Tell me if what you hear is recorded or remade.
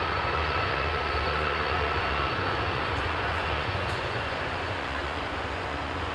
remade